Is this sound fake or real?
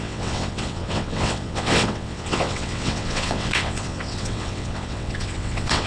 fake